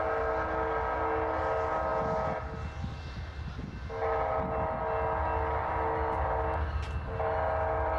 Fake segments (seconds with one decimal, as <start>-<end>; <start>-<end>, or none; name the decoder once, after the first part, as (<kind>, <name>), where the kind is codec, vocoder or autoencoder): none